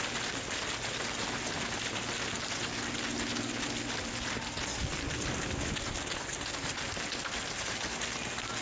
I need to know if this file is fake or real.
real